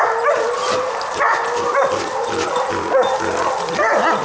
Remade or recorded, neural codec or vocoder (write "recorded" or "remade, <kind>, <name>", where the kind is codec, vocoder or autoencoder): recorded